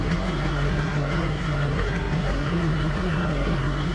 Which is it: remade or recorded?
remade